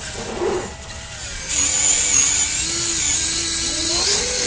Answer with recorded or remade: recorded